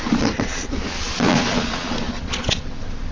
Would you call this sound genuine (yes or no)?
no